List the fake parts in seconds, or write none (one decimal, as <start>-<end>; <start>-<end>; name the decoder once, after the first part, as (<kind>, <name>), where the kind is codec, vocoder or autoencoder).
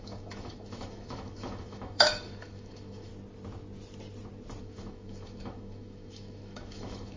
0.0-3.1 (autoencoder, DAC-VAE); 4.6-7.2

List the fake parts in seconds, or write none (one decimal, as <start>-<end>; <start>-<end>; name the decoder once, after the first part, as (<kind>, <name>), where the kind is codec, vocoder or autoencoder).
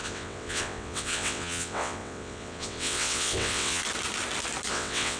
0.0-3.8 (vocoder, WaveNeXt); 4.7-5.2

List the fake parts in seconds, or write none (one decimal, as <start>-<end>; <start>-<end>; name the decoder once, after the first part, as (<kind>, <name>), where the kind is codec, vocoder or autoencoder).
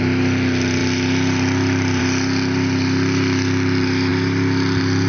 none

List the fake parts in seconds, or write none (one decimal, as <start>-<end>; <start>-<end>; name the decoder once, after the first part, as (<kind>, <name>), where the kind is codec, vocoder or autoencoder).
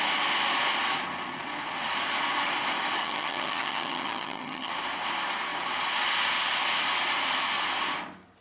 3.0-4.7 (vocoder, HiFi-GAN)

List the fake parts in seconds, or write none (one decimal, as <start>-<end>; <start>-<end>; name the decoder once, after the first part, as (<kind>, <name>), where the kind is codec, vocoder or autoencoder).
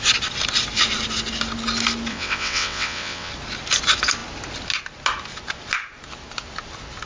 2.1-3.3 (vocoder, WaveNeXt)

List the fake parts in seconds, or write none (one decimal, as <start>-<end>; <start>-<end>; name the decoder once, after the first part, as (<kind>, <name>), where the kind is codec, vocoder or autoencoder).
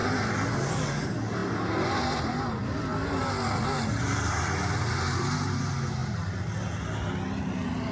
none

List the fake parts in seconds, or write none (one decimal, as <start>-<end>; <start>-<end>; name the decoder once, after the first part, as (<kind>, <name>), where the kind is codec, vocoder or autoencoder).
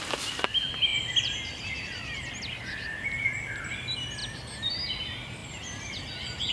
5.4-6.0 (vocoder, BigVGAN v2)